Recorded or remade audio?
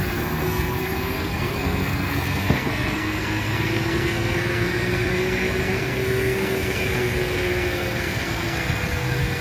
remade